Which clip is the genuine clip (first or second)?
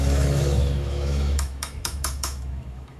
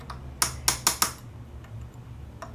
second